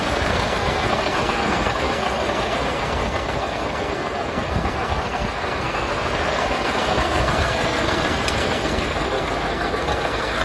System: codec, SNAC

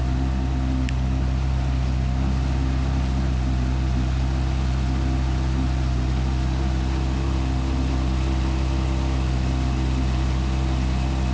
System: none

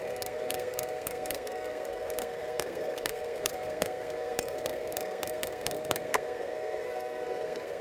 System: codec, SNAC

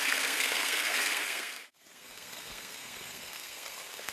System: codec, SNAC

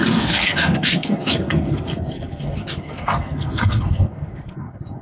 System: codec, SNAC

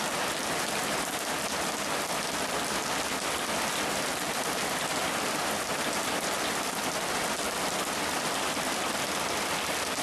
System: none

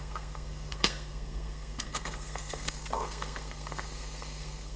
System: codec, SNAC